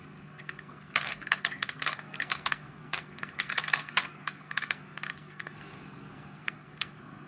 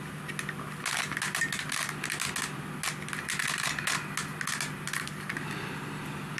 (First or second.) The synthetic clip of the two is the first